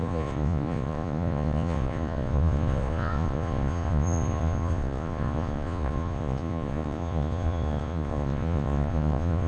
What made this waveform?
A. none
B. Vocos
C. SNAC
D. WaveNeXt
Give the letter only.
B